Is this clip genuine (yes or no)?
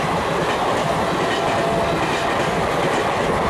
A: yes